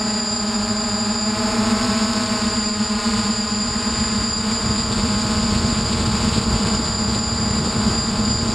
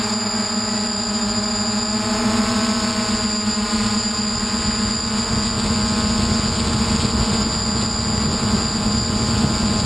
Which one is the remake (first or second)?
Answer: first